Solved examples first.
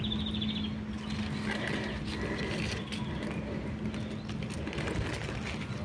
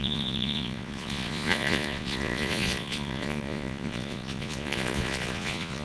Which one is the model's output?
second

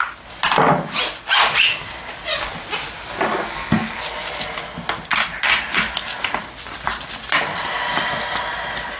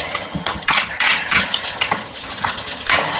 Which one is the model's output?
second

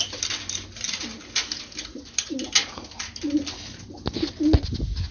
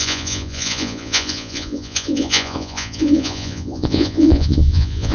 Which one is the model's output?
second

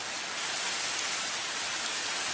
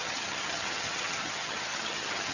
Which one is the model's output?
second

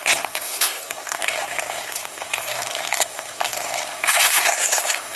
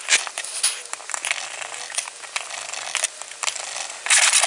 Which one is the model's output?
first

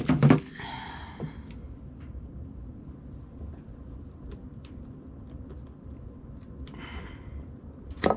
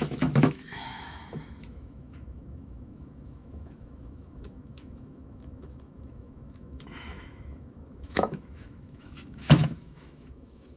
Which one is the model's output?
second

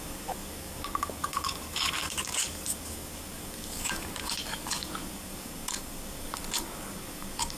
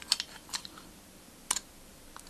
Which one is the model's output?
first